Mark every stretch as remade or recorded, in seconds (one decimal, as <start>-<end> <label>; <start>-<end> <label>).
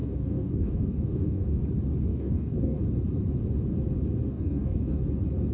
0.0-1.6 remade; 1.6-2.1 recorded; 2.1-2.8 remade; 2.8-4.3 recorded; 4.3-5.0 remade; 5.0-5.5 recorded